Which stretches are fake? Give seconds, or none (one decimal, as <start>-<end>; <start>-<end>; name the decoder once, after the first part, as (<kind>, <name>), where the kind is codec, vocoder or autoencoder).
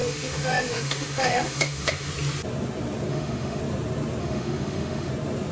0.0-2.1 (autoencoder, DAC-VAE); 3.1-3.6; 4.2-5.1